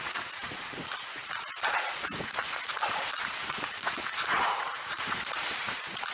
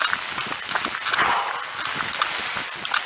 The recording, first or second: second